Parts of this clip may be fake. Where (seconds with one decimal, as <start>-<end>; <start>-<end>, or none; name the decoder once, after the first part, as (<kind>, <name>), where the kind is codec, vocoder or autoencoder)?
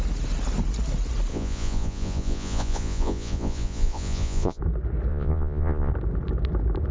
1.3-4.6 (vocoder, Vocos); 5.1-5.9